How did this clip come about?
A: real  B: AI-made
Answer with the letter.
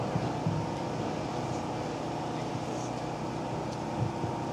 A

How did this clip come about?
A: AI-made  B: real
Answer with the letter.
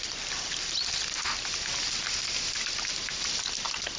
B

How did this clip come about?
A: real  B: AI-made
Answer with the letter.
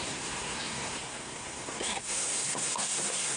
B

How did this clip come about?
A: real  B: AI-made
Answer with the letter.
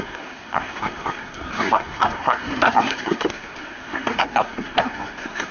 B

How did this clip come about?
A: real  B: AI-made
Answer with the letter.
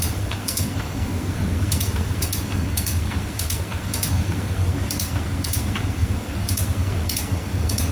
B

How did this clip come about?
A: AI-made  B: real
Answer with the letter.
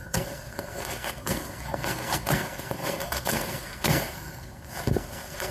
A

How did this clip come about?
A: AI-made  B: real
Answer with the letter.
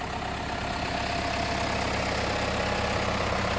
B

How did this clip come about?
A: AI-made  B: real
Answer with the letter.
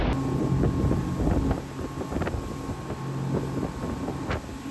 B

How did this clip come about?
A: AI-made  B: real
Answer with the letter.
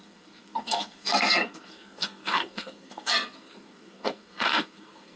A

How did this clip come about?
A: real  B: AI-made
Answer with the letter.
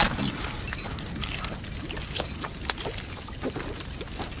A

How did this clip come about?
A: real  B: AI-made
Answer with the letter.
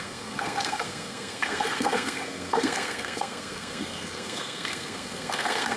B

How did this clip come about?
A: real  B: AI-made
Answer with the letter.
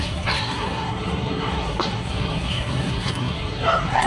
B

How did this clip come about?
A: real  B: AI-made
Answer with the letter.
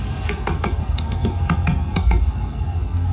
B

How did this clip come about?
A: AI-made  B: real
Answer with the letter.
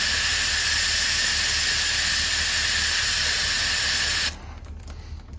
B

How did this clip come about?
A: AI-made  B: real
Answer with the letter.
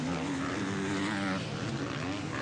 B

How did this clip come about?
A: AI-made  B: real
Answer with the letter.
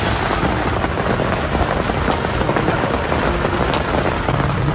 B